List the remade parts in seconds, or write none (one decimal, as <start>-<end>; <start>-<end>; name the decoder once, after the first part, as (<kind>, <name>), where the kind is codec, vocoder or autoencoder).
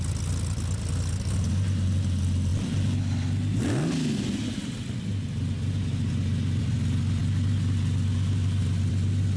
none